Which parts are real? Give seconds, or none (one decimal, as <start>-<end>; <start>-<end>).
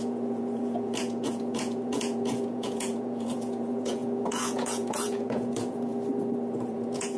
5.9-6.5